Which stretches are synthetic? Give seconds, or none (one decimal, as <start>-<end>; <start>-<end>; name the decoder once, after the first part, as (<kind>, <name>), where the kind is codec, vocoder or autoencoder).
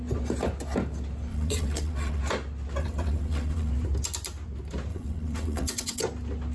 1.3-2.2 (vocoder, WaveNeXt); 2.8-3.7; 4.9-6.0